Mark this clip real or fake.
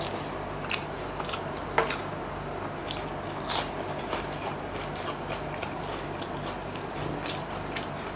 real